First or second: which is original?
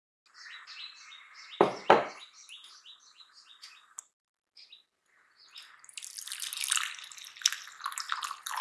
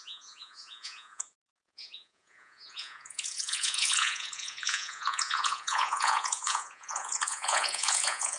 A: first